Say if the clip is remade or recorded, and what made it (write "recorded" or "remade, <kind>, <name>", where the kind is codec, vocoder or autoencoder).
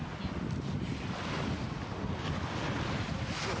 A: recorded